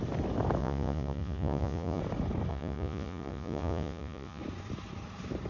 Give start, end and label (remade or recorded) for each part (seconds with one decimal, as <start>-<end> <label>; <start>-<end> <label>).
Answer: 0.0-0.6 recorded; 0.6-2.0 remade; 2.0-2.5 recorded; 2.5-4.4 remade; 4.4-5.5 recorded